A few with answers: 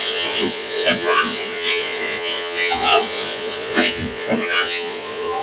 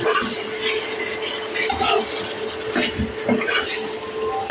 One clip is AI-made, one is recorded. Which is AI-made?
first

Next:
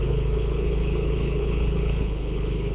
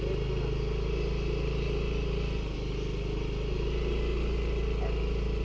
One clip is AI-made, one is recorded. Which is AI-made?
first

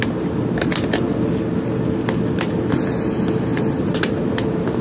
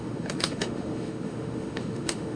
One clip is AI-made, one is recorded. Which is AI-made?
second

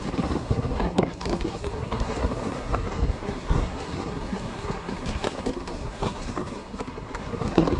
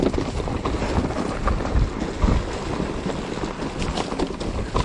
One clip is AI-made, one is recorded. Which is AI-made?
first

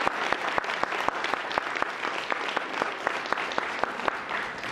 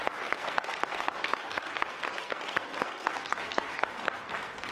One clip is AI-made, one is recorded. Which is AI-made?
second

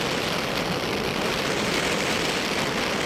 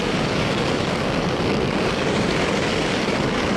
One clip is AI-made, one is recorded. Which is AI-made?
second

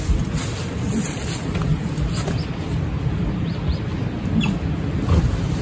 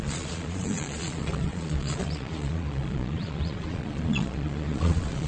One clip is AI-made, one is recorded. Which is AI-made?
second